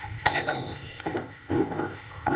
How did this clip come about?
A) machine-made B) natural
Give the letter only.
A